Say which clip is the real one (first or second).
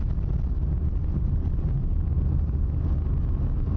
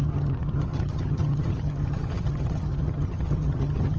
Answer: first